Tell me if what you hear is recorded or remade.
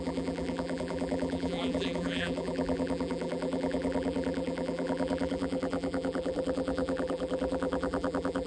remade